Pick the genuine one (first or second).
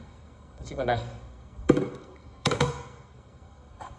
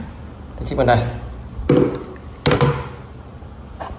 second